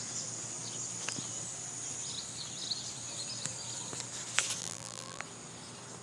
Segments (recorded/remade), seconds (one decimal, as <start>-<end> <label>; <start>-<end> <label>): 0.0-4.6 recorded; 4.6-5.2 remade; 5.2-6.0 recorded